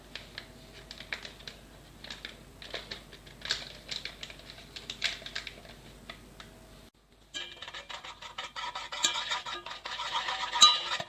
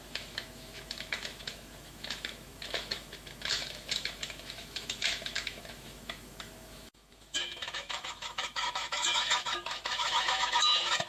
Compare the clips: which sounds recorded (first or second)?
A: first